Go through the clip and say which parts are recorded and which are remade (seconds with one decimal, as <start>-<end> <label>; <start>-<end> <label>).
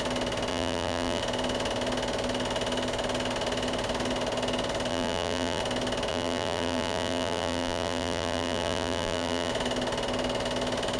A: 0.0-0.5 recorded; 0.5-1.2 remade; 1.2-4.9 recorded; 4.9-5.6 remade; 5.6-6.1 recorded; 6.1-9.5 remade; 9.5-11.0 recorded